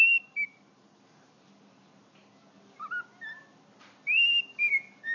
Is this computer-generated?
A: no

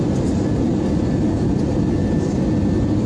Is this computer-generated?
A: no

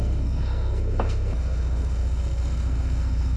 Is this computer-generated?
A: yes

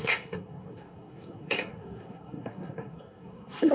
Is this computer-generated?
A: yes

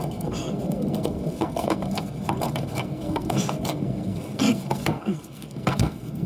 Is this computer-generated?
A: yes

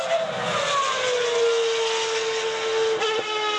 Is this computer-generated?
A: no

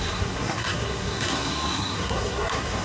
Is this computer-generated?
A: yes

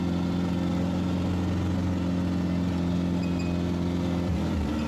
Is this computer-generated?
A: no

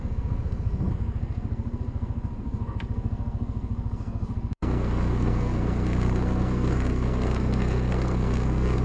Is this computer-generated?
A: yes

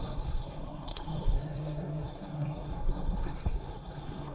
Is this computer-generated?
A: yes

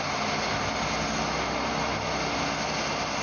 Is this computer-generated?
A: no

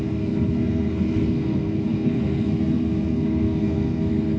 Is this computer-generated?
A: yes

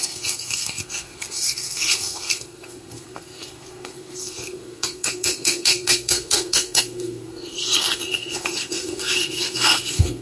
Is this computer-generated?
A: yes